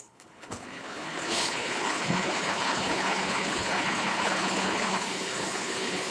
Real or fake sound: fake